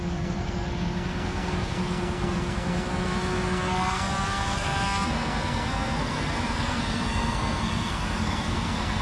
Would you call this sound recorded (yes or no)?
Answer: no